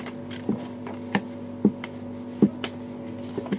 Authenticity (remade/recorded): recorded